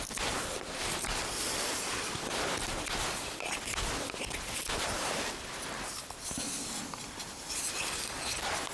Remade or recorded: recorded